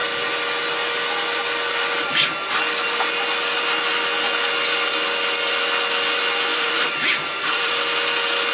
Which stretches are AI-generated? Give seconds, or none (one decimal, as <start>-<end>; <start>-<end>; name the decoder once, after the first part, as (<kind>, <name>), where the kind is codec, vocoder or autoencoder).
6.5-7.7 (vocoder, BigVGAN v2)